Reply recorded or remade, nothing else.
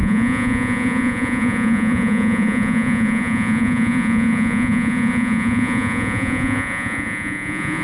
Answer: remade